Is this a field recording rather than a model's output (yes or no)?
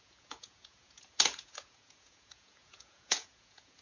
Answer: no